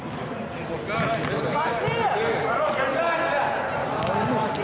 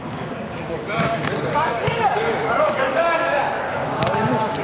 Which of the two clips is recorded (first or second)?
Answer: first